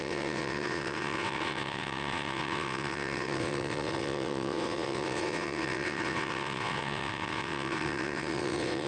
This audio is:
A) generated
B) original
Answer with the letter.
A